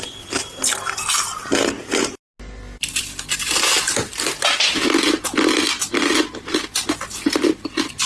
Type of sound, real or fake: real